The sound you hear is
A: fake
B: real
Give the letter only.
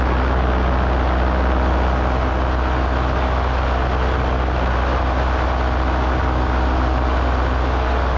B